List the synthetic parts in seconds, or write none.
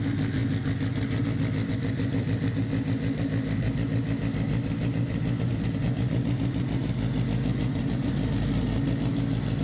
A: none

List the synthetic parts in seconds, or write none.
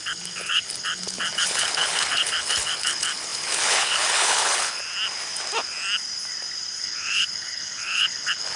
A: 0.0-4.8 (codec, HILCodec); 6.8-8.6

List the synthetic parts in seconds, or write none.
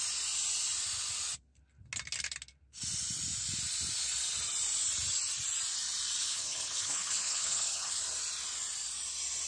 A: 6.2-8.0 (codec, HILCodec)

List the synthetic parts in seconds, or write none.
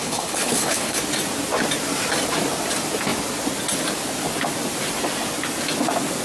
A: 0.0-1.0 (codec, HILCodec)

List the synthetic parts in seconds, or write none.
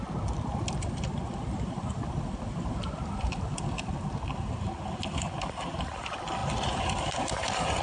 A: none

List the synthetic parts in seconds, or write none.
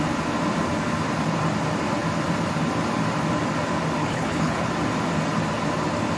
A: 4.0-4.7 (codec, HILCodec)